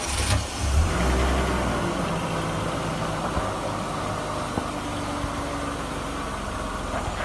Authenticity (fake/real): real